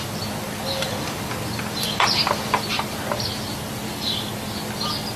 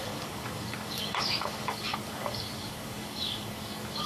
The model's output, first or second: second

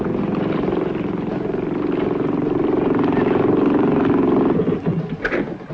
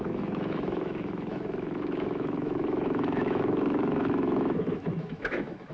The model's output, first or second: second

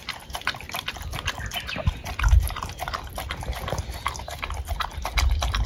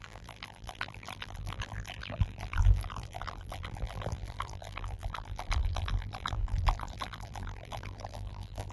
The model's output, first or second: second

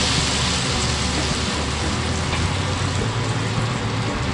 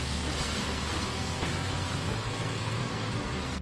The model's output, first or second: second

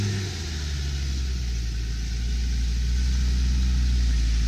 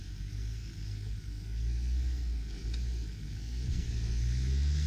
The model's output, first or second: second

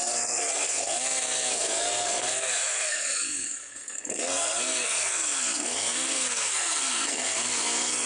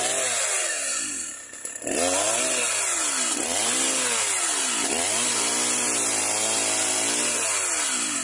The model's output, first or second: first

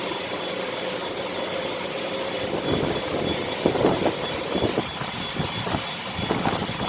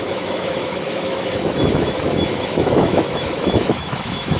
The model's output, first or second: second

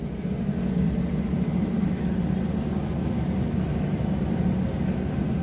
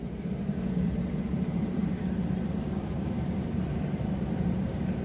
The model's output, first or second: second